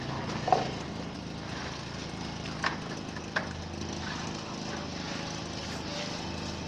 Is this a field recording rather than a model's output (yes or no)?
yes